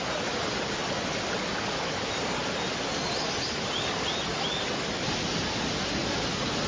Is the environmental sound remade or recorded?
recorded